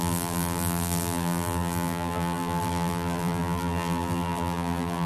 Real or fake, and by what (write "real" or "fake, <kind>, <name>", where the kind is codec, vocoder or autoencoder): fake, vocoder, BigVGAN v2